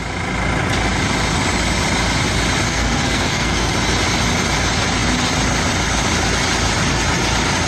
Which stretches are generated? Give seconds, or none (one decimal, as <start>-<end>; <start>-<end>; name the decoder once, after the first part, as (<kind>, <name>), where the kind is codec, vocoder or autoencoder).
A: 2.7-3.7 (codec, SNAC)